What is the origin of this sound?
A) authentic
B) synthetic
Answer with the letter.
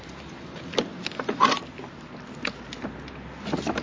A